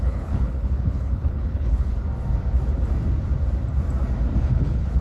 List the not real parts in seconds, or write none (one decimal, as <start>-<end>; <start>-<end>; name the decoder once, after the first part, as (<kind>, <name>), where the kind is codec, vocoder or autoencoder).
0.0-1.9 (codec, HILCodec); 4.4-5.0